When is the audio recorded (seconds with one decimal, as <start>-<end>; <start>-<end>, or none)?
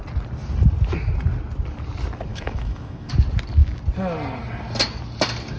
0.0-2.3; 3.1-5.6